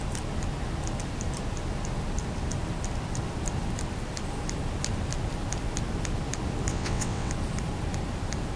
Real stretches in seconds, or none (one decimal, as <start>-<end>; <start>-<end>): 0.0-6.7; 7.3-8.6